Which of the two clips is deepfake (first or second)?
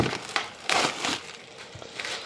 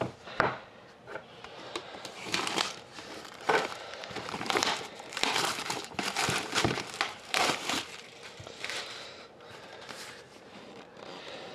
second